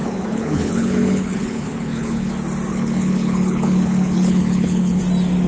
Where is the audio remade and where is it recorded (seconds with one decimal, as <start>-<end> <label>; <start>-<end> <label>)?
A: 0.0-2.3 remade; 2.3-2.7 recorded; 2.7-5.0 remade; 5.0-5.5 recorded